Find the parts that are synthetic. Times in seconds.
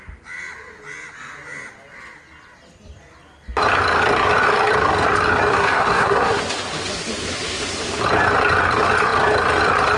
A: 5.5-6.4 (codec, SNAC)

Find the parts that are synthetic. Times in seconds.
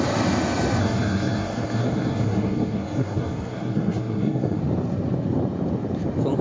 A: 0.8-4.6 (codec, SNAC)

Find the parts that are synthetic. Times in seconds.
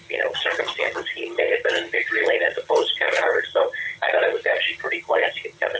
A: 0.0-5.8 (vocoder, HiFi-GAN)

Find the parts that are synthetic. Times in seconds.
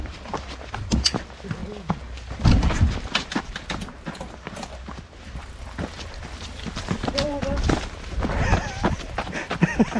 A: none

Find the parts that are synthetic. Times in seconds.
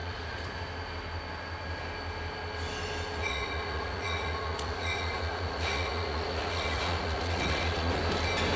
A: 0.0-0.6 (vocoder, Vocos); 3.2-8.0